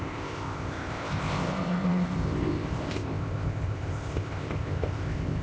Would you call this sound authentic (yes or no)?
no